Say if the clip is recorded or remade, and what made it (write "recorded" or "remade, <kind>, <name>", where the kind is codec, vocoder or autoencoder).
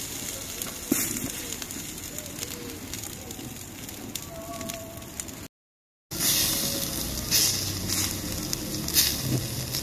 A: recorded